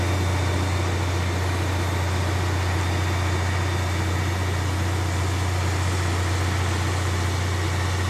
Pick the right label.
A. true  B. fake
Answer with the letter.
A